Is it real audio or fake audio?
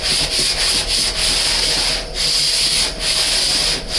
real